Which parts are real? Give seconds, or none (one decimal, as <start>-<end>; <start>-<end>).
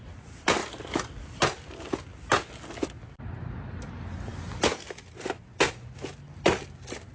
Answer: 0.0-7.1